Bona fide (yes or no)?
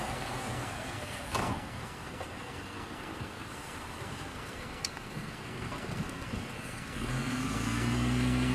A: no